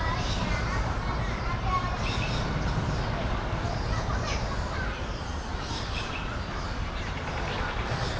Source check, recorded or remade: remade